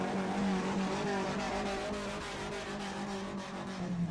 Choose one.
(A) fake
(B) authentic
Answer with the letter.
B